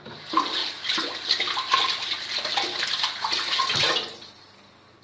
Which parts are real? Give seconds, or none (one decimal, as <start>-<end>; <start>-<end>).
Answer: 0.0-5.0

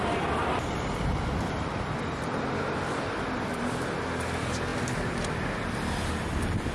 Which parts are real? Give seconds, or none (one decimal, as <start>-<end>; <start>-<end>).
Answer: 4.0-6.7